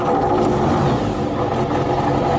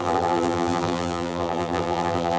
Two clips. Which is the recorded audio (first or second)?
first